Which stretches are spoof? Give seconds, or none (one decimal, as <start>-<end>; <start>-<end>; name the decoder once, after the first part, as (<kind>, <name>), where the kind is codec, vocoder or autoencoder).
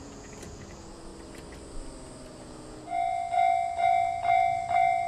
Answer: 0.0-1.1 (vocoder, Vocos); 2.4-5.1